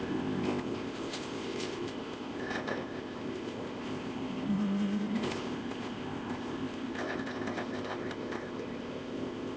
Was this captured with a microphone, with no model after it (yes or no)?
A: no